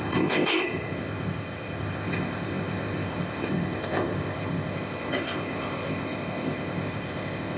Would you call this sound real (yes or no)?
no